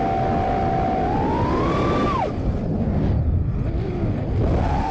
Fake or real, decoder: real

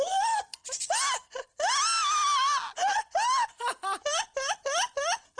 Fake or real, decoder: real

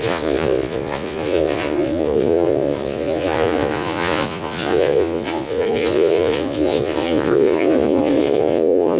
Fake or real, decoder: fake, vocoder, Vocos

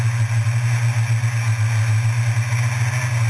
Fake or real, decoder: real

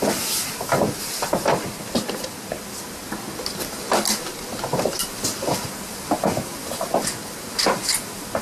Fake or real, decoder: real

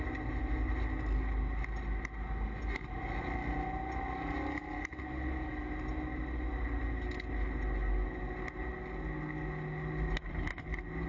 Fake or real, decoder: real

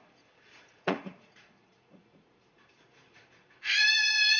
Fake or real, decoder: fake, vocoder, Vocos